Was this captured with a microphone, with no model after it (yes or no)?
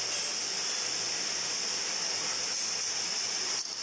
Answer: yes